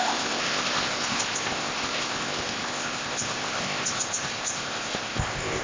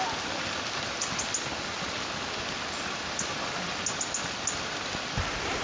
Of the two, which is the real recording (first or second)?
second